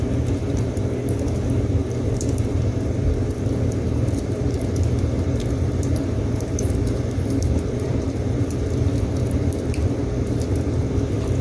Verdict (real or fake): fake